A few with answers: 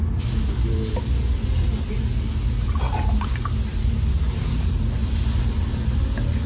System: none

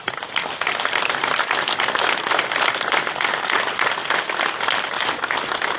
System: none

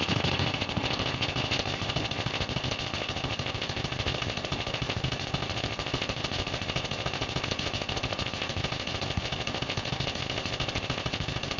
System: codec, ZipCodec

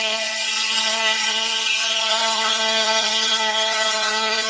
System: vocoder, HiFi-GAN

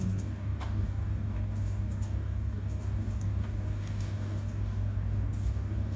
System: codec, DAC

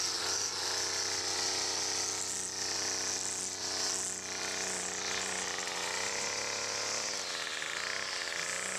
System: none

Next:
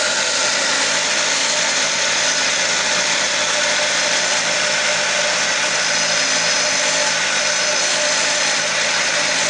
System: none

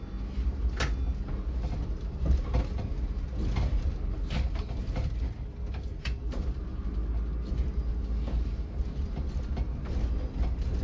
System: none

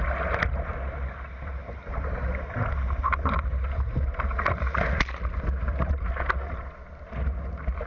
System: none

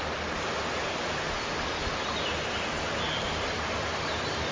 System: vocoder, BigVGAN v2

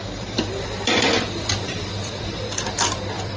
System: vocoder, BigVGAN v2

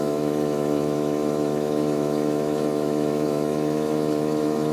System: autoencoder, DAC-VAE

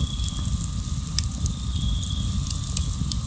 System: none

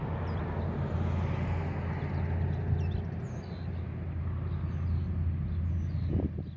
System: none